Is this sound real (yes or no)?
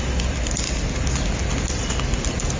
yes